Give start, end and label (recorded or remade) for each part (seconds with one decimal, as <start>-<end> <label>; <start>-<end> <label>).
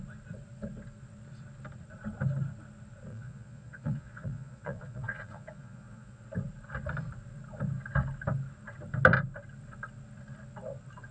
0.0-3.1 recorded; 3.1-6.2 remade; 6.2-11.1 recorded